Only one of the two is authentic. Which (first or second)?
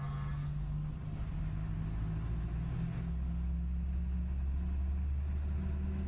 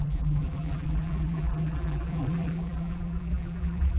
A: first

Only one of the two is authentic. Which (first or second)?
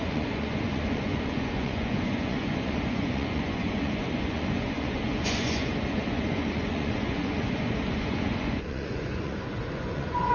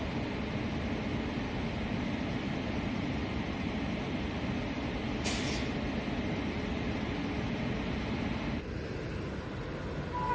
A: second